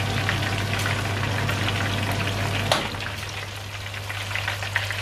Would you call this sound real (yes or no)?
yes